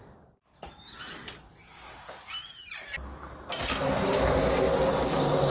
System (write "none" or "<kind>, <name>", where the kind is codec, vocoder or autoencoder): none